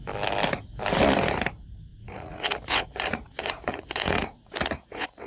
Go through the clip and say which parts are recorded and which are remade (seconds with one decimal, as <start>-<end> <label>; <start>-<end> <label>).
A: 0.0-1.9 recorded; 1.9-5.3 remade